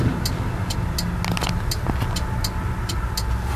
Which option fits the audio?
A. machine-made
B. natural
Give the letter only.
B